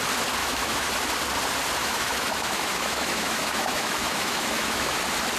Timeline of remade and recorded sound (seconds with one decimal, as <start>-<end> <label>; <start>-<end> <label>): 0.0-0.4 recorded; 0.4-0.9 remade; 0.9-1.8 recorded; 1.8-5.0 remade; 5.0-5.4 recorded